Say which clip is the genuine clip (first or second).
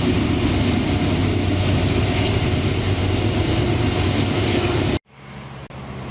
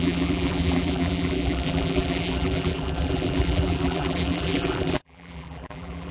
first